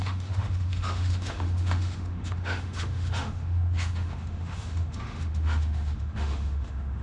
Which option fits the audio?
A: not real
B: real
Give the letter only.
A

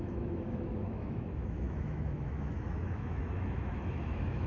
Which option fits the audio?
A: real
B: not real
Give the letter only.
B